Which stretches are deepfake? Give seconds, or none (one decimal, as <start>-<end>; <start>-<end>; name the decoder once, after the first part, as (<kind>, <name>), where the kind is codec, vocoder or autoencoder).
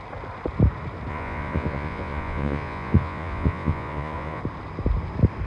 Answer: 1.1-4.4 (vocoder, Vocos)